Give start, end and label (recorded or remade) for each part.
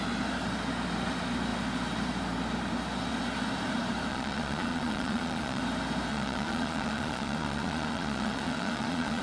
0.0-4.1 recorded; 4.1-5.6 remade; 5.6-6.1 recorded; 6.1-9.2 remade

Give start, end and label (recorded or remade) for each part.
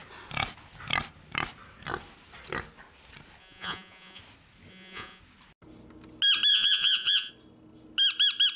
0.0-3.4 recorded; 3.4-4.2 remade; 4.2-4.7 recorded; 4.7-5.2 remade; 5.2-6.5 recorded; 6.5-7.3 remade; 7.3-8.6 recorded